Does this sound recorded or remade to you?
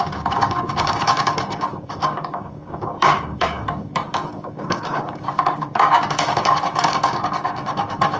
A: remade